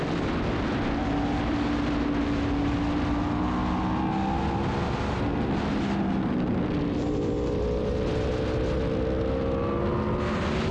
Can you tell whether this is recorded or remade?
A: recorded